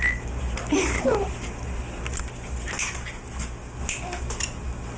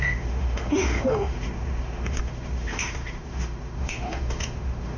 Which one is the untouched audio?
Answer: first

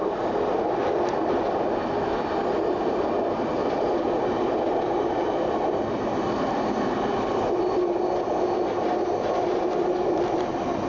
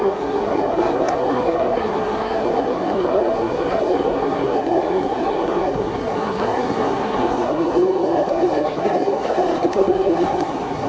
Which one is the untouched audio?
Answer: first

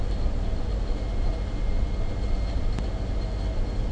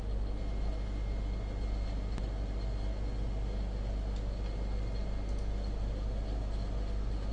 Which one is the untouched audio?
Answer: second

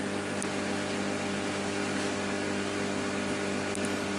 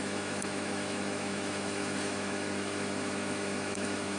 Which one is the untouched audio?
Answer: first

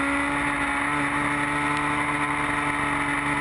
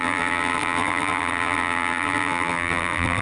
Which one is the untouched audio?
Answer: first